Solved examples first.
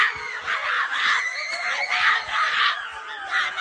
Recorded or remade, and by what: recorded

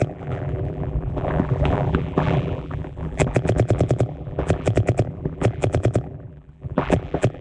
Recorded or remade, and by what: remade, vocoder, BigVGAN v2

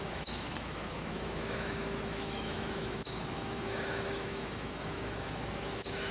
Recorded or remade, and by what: remade, autoencoder, DAC-VAE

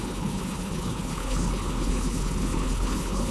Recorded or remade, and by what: remade, codec, HILCodec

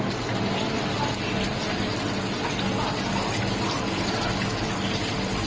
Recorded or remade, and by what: recorded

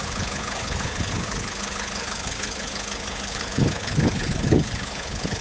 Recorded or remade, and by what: remade, codec, HILCodec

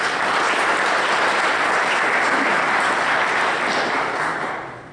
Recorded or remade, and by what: recorded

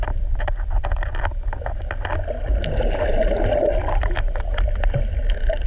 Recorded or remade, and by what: recorded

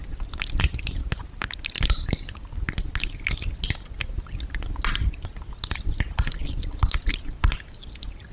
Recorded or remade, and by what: recorded